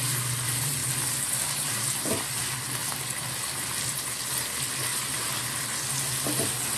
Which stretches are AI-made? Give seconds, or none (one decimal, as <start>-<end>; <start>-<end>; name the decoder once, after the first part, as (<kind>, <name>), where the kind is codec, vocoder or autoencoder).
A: none